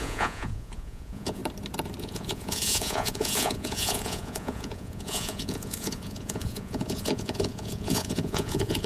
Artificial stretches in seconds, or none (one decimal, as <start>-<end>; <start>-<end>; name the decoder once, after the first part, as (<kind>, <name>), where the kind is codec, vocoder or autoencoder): 0.0-1.4 (vocoder, Vocos); 2.0-8.9